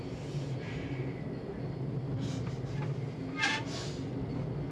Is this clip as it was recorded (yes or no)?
yes